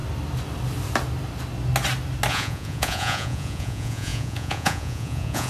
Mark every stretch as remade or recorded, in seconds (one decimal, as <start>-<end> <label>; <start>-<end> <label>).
0.0-2.3 recorded; 2.3-5.5 remade